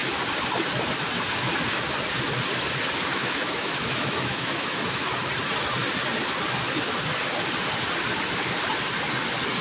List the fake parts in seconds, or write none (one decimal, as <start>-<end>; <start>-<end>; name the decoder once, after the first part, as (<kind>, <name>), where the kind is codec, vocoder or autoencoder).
3.1-5.1 (autoencoder, DAC-VAE)